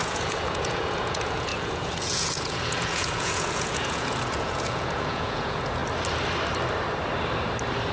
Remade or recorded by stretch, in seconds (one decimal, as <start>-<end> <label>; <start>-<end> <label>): 0.0-5.8 remade; 5.8-7.9 recorded